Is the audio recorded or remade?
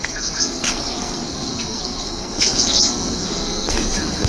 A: remade